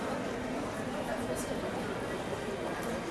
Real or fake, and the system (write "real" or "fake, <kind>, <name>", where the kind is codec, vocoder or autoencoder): real